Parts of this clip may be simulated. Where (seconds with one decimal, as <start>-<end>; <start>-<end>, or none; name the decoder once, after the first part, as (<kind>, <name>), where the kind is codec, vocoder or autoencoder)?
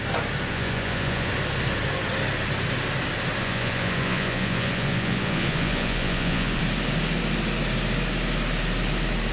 0.5-1.3 (vocoder, Vocos); 3.4-6.6